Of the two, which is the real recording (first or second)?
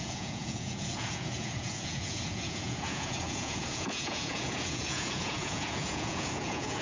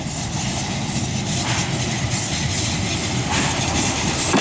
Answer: second